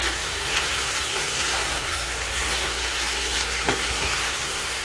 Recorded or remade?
remade